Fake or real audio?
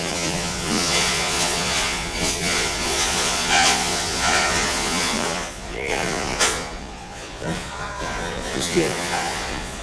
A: fake